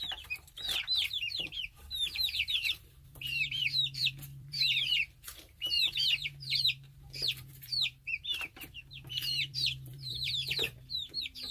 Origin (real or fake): fake